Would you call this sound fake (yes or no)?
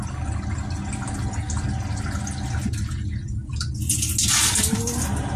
no